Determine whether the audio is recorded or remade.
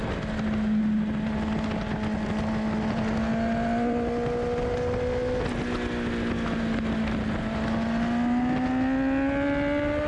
recorded